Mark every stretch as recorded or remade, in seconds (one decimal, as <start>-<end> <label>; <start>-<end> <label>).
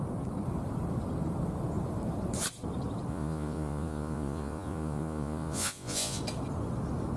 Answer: 0.0-3.1 recorded; 3.1-6.2 remade; 6.2-7.2 recorded